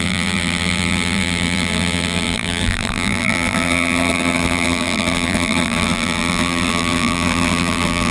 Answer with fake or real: fake